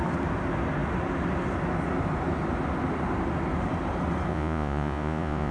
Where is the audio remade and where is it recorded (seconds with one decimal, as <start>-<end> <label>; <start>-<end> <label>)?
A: 0.0-4.3 recorded; 4.3-5.5 remade